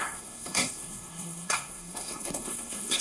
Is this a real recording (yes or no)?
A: no